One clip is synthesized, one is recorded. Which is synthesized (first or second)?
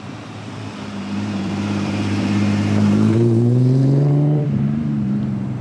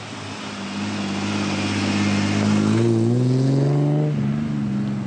first